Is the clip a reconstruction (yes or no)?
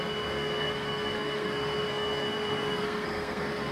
yes